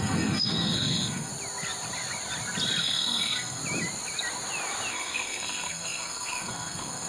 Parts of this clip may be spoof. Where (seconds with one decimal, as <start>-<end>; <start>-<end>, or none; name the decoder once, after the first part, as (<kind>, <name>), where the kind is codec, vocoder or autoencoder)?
0.0-1.3 (codec, SNAC); 2.8-3.6; 4.9-7.1